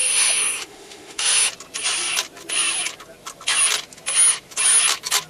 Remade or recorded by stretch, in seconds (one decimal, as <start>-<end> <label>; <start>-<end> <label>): 0.0-1.5 remade; 1.5-5.3 recorded